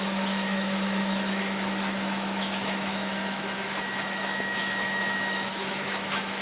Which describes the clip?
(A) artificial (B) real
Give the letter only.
A